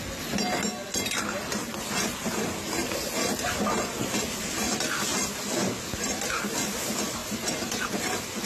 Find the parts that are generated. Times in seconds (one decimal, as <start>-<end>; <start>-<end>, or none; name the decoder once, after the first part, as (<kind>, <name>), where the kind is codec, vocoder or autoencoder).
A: 1.5-2.7 (vocoder, BigVGAN v2); 7.2-7.7